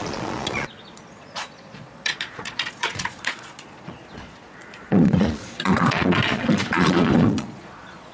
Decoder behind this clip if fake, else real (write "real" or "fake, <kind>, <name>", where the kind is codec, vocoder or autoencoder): fake, vocoder, Vocos